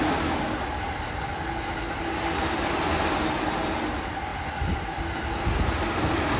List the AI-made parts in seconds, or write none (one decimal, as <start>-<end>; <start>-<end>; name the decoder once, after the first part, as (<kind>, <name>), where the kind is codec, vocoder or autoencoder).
none